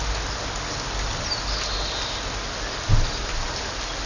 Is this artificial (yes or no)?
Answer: no